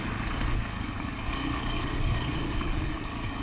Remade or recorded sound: remade